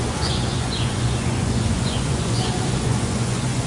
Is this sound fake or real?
fake